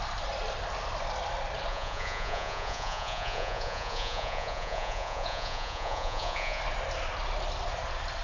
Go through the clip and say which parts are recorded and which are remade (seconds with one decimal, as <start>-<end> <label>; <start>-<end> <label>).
0.0-1.7 recorded; 1.7-6.6 remade; 6.6-8.2 recorded